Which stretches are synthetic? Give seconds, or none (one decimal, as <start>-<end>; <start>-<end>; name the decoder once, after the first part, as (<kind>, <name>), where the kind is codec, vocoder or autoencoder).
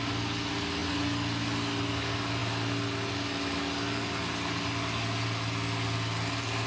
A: none